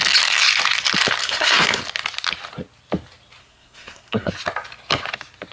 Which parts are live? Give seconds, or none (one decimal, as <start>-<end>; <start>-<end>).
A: 0.0-1.2; 1.8-3.4; 4.3-5.5